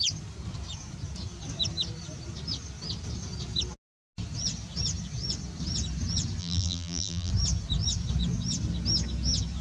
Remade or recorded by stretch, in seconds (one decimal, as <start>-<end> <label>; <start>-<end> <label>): 0.0-6.4 recorded; 6.4-7.3 remade; 7.3-9.6 recorded

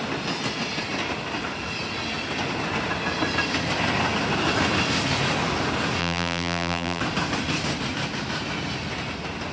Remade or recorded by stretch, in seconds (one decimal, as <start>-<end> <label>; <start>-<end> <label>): 0.0-6.0 recorded; 6.0-7.0 remade; 7.0-9.5 recorded

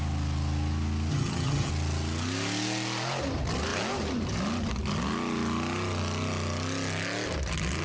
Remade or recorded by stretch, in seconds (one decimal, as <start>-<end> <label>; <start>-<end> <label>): 0.0-1.1 recorded; 1.1-1.7 remade; 1.7-7.8 recorded

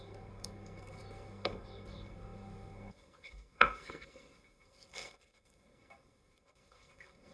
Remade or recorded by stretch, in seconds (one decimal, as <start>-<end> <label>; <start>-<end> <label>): 0.0-7.3 remade

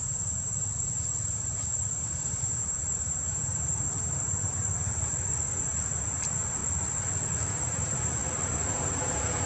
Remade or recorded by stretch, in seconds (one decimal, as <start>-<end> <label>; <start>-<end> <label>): 0.0-4.7 remade; 4.7-5.9 recorded; 5.9-6.6 remade; 6.6-7.5 recorded; 7.5-9.5 remade